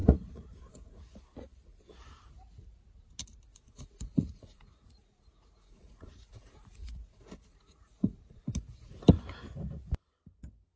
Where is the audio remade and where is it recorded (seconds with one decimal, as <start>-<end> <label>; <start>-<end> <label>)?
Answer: 0.0-1.2 remade; 1.2-3.5 recorded; 3.5-8.4 remade; 8.4-10.8 recorded